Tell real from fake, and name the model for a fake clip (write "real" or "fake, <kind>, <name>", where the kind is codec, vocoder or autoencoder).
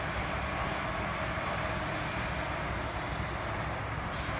real